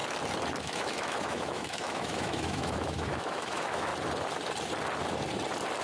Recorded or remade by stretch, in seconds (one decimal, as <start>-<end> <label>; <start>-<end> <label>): 0.0-0.6 recorded; 0.6-3.9 remade; 3.9-5.8 recorded